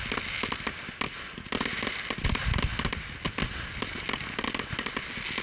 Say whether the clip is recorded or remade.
recorded